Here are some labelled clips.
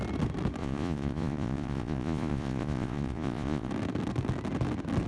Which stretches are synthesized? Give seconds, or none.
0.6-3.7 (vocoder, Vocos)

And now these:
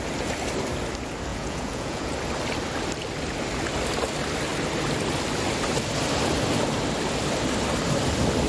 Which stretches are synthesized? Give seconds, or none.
1.3-2.1 (vocoder, Vocos)

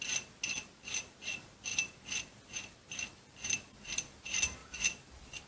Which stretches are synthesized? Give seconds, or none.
4.6-5.5 (vocoder, BigVGAN v2)